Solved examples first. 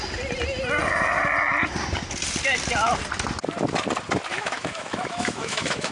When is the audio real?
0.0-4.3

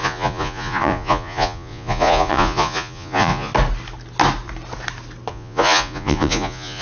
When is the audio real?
3.5-5.3

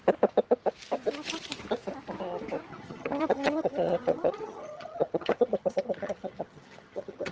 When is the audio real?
0.0-2.7

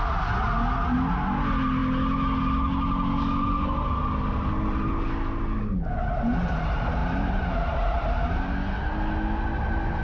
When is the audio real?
0.0-7.0; 8.5-10.0